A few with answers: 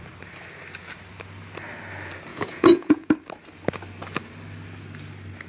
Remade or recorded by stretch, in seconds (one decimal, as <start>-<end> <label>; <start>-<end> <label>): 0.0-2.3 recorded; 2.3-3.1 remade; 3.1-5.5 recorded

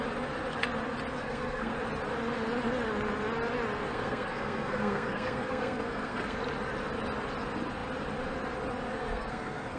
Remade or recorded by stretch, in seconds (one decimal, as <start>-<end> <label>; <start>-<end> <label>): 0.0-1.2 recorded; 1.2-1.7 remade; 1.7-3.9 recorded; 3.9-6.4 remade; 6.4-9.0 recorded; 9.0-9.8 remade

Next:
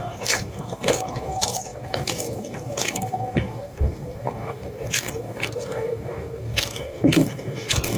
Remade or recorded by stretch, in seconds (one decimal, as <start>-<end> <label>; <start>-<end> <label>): 0.0-8.0 remade